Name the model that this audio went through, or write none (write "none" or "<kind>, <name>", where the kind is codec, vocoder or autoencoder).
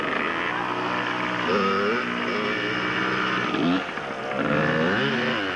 none